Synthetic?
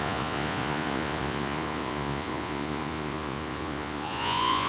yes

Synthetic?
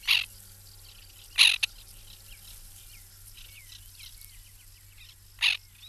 no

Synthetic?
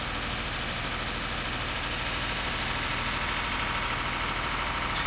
no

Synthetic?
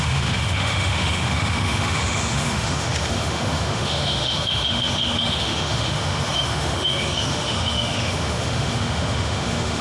yes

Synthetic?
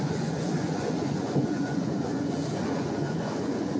yes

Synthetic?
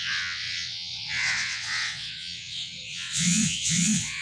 yes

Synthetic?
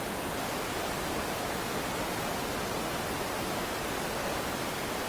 no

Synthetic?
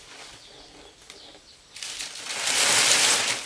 no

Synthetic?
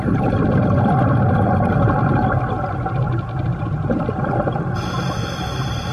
no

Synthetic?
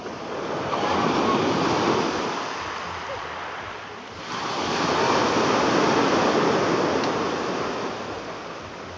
no